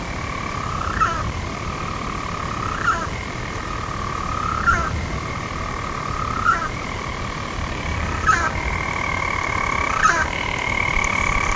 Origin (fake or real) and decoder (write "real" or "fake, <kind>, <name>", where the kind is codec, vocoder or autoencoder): fake, vocoder, BigVGAN v2